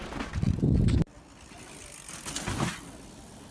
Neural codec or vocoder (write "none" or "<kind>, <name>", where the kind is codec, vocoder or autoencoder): none